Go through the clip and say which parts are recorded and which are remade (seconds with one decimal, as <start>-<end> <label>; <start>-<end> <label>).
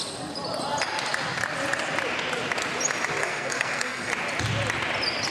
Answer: 0.0-3.2 recorded; 3.2-4.1 remade; 4.1-5.3 recorded